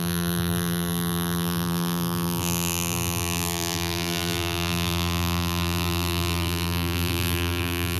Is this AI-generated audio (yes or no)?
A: yes